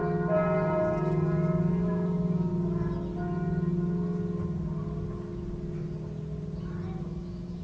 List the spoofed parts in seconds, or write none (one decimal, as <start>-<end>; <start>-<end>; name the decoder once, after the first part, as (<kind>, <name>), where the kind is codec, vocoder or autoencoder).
1.7-2.5 (autoencoder, DAC-VAE); 7.0-7.6